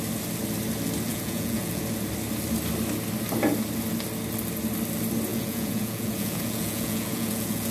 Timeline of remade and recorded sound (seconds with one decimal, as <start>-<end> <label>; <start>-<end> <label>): 0.0-1.1 recorded; 1.1-1.8 remade; 1.8-5.3 recorded; 5.3-7.7 remade